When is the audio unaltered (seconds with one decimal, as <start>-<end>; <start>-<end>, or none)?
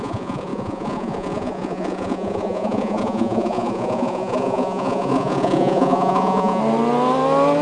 6.6-7.6